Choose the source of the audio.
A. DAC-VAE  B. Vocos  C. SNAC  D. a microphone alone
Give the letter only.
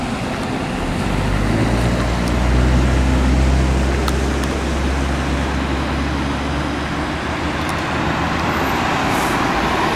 D